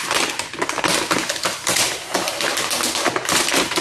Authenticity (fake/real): real